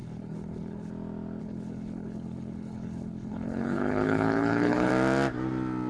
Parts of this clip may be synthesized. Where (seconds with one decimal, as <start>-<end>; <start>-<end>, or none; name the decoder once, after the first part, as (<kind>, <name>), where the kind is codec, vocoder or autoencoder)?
0.0-0.9 (codec, HILCodec); 1.4-4.9